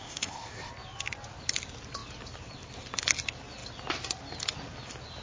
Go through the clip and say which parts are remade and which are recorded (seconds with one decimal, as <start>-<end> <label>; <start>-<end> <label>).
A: 0.0-0.7 remade; 0.7-5.2 recorded